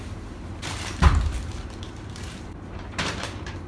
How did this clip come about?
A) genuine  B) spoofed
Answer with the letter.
B